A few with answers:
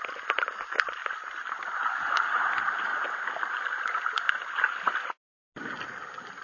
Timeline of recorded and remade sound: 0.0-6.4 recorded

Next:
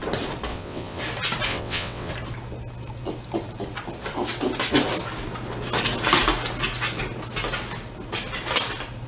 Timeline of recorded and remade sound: 0.0-0.5 recorded; 0.5-1.0 remade; 1.0-1.5 recorded; 1.5-2.1 remade; 2.1-9.1 recorded

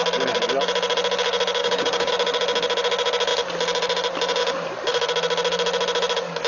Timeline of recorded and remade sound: 0.0-1.6 recorded; 1.6-2.1 remade; 2.1-6.5 recorded

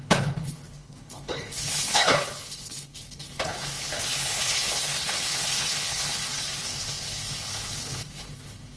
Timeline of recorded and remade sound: 0.0-8.8 remade

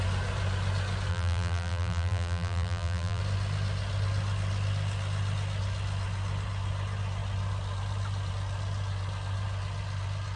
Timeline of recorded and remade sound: 0.0-1.1 recorded; 1.1-3.2 remade; 3.2-10.4 recorded

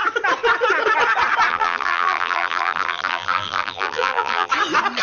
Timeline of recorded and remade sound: 0.0-1.5 recorded; 1.5-4.5 remade; 4.5-5.0 recorded

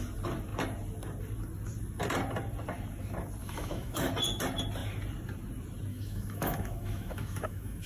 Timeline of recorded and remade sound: 0.0-3.4 recorded; 3.4-4.1 remade; 4.1-5.9 recorded; 5.9-7.9 remade

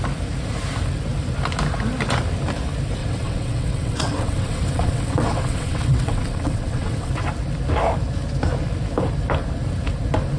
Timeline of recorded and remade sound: 0.0-3.0 recorded; 3.0-7.1 remade; 7.1-10.4 recorded